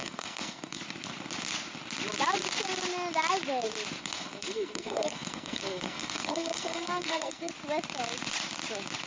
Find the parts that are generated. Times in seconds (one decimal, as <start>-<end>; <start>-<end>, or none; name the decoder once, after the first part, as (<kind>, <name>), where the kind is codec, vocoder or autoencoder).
0.0-0.8 (codec, SNAC); 4.0-7.5